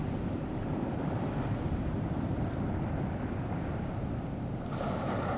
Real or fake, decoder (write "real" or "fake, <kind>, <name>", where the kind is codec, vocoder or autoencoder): real